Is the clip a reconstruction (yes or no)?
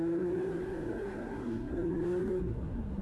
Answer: yes